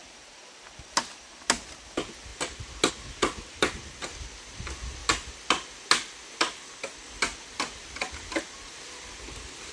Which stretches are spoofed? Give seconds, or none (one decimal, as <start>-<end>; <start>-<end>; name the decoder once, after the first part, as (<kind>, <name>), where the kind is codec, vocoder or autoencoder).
none